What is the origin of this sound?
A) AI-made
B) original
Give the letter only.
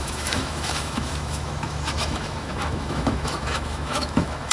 A